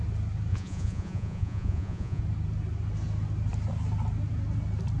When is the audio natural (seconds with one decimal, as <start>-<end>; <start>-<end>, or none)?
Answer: 0.0-0.5; 2.2-5.0

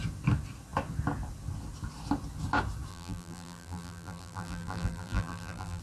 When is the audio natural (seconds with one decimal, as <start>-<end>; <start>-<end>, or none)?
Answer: 0.0-2.9